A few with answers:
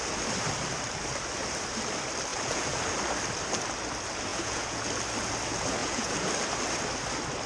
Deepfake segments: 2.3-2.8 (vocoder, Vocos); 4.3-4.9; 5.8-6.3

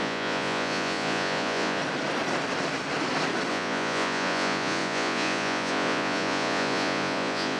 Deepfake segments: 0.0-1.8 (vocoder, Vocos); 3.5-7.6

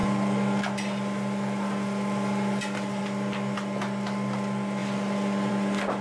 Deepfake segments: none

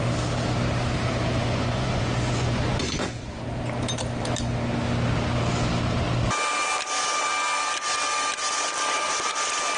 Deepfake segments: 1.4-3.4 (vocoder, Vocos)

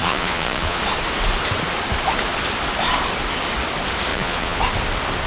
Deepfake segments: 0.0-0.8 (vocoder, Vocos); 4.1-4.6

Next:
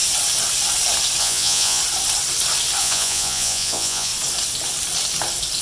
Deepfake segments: 1.2-1.8 (vocoder, Vocos); 2.8-4.1

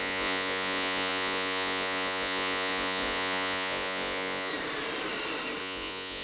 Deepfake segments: 0.0-4.5 (vocoder, Vocos); 5.6-6.2

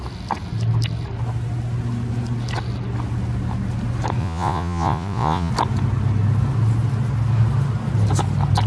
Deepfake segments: 4.2-5.5 (vocoder, Vocos)